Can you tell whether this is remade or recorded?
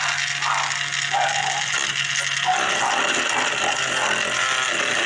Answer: recorded